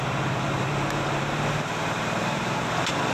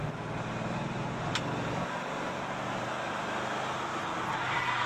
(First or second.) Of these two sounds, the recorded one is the second